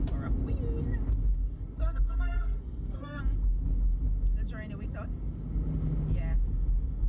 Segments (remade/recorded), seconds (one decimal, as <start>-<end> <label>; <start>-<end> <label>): 0.0-1.8 recorded; 1.8-3.2 remade; 3.2-7.1 recorded